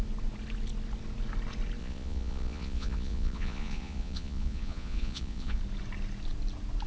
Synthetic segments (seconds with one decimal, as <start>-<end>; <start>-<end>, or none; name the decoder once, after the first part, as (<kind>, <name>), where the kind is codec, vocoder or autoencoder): 1.8-5.6 (vocoder, Vocos)